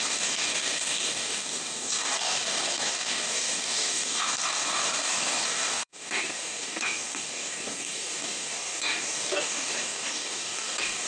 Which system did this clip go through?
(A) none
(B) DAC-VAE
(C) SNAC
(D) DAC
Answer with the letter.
D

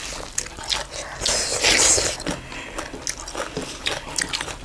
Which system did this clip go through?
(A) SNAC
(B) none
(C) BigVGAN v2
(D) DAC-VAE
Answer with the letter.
B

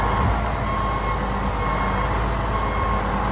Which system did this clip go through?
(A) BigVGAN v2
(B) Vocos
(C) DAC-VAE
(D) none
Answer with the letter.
D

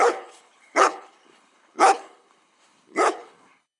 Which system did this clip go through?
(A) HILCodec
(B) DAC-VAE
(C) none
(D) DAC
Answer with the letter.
A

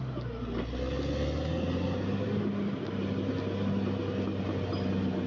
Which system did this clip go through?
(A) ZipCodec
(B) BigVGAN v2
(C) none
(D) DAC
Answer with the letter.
C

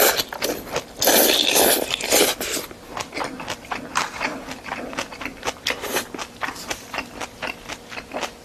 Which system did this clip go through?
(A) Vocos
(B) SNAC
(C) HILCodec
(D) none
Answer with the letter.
D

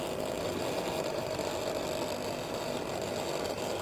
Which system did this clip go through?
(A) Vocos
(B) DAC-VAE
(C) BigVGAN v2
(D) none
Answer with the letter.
D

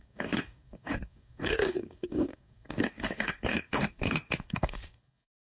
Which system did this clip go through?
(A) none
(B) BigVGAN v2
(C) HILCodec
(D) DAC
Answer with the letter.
D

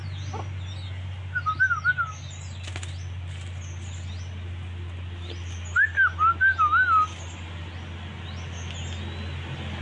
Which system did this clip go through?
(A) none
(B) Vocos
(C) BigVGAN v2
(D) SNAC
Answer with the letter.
A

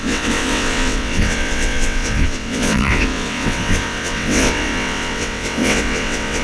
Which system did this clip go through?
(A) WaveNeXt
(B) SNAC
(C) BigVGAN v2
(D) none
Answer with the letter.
A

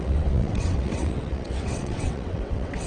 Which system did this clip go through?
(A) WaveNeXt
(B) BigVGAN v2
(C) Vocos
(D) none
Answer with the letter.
A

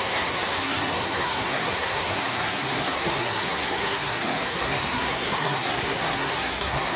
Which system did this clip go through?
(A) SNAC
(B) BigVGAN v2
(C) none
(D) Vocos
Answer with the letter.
A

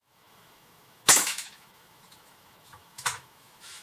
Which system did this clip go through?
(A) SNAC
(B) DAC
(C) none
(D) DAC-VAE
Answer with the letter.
D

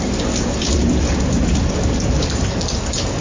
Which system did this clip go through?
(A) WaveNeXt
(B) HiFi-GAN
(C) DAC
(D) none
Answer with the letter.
D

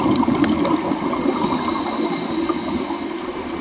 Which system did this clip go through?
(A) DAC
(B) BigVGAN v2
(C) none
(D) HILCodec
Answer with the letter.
C